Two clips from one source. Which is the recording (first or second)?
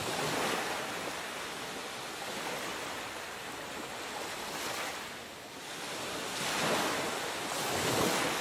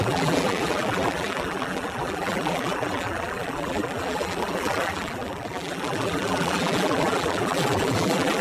first